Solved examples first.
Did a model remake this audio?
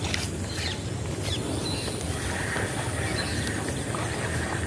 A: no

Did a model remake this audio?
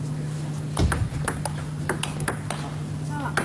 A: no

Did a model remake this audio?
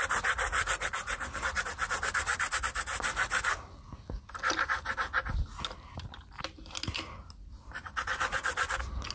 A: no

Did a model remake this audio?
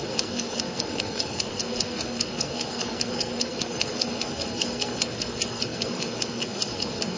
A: yes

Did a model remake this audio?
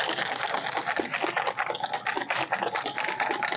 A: no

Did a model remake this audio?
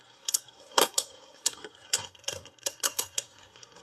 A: yes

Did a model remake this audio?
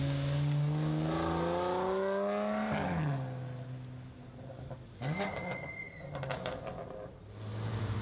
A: no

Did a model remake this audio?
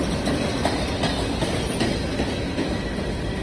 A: no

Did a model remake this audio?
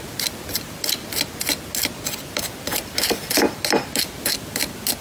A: no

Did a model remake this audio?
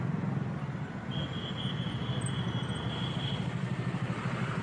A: no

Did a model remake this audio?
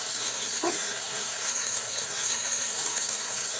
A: yes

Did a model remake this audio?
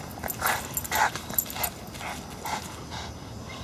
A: no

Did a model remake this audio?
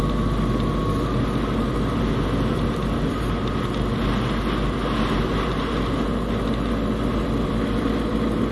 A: no